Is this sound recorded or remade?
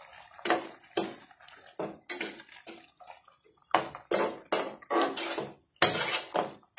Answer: recorded